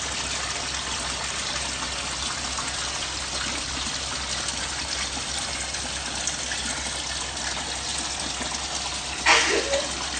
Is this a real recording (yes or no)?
yes